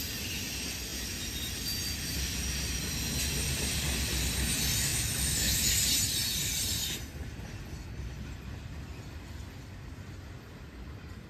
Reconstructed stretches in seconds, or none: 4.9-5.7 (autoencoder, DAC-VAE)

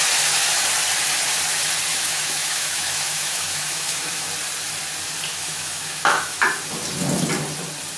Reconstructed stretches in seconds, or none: 1.9-4.3 (autoencoder, DAC-VAE); 5.3-6.4

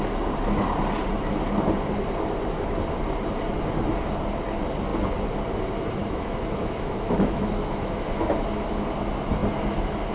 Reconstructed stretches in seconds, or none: 6.0-8.3 (autoencoder, DAC-VAE)

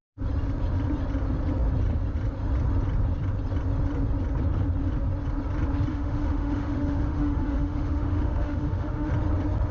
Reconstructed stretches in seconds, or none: 5.9-9.1 (autoencoder, DAC-VAE)

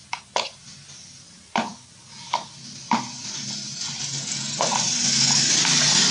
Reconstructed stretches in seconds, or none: none

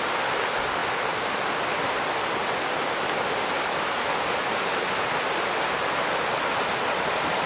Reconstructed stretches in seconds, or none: none

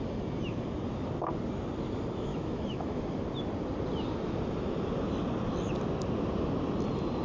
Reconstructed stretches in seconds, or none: 2.3-3.0 (autoencoder, DAC-VAE)